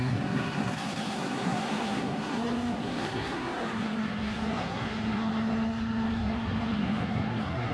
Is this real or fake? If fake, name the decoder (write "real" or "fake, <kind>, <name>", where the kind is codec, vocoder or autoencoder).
fake, codec, SNAC